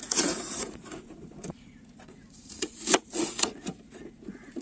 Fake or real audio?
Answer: fake